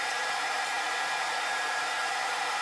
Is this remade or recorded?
remade